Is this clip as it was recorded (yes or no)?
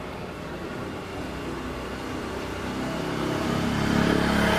yes